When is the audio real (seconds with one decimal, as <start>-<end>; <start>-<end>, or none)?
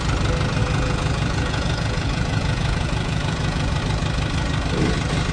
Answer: 0.0-0.6; 3.8-5.3